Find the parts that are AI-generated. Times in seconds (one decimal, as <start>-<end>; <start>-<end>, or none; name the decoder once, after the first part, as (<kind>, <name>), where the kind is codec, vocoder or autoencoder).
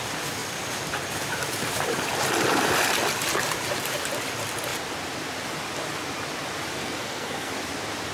6.8-7.5 (codec, SNAC)